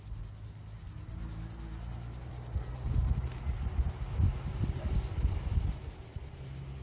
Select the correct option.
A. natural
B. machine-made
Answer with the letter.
A